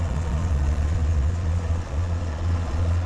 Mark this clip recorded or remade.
remade